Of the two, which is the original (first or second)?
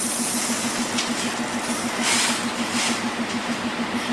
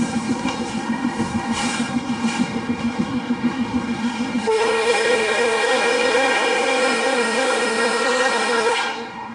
first